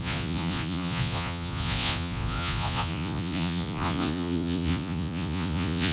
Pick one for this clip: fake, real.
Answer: fake